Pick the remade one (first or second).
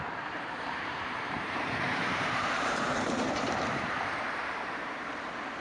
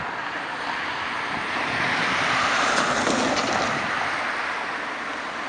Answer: first